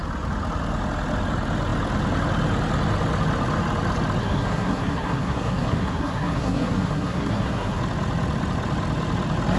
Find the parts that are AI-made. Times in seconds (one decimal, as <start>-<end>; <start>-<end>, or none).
4.2-7.8